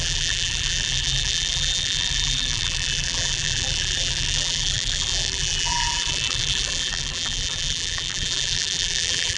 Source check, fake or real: fake